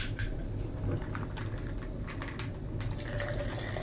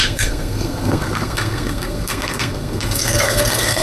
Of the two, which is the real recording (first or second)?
first